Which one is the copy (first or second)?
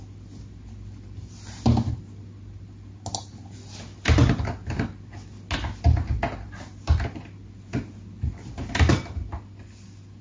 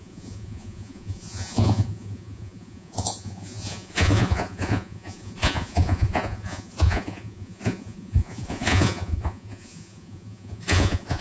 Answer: second